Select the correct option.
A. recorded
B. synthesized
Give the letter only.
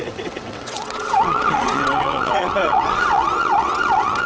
B